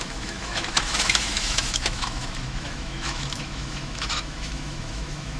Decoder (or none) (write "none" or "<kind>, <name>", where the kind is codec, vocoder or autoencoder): autoencoder, DAC-VAE